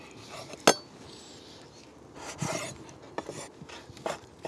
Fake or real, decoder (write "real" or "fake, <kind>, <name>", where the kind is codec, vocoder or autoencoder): real